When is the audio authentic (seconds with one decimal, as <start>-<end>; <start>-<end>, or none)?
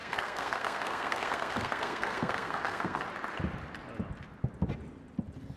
3.0-5.6